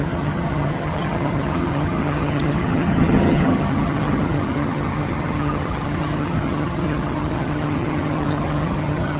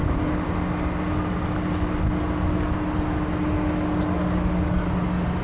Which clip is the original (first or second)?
second